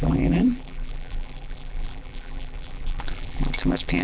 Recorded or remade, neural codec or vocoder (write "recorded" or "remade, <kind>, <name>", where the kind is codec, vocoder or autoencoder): remade, vocoder, BigVGAN v2